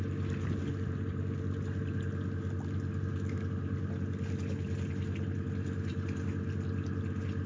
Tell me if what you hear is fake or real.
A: real